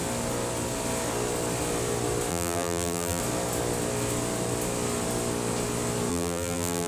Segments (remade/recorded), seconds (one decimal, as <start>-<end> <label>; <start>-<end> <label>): 0.0-2.3 recorded; 2.3-3.2 remade; 3.2-6.1 recorded; 6.1-6.9 remade